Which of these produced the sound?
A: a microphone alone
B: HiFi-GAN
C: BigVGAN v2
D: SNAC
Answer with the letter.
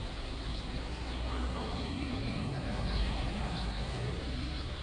D